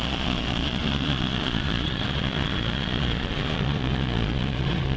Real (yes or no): no